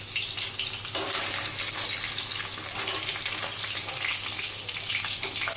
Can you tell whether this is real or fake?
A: real